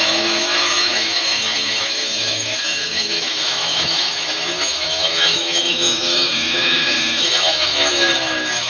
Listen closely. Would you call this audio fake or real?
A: fake